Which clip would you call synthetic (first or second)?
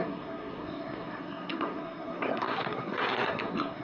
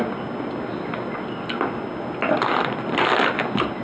first